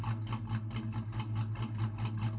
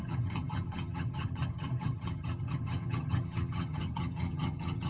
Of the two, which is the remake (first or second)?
second